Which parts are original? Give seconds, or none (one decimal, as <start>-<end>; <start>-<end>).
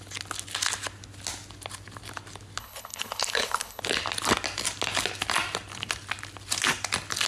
0.0-2.6; 3.8-7.3